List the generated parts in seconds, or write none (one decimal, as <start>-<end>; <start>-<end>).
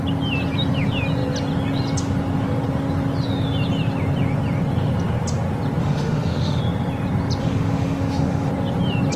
5.8-6.6; 7.4-8.5